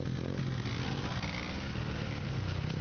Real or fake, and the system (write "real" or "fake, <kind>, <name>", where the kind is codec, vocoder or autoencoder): real